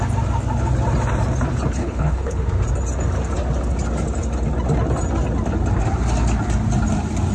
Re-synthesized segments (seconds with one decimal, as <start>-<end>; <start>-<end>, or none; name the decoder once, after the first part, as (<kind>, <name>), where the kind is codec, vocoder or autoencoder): 1.8-2.4 (codec, HILCodec)